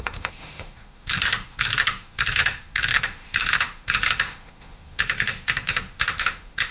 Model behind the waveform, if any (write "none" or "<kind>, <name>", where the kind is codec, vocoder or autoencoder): autoencoder, DAC-VAE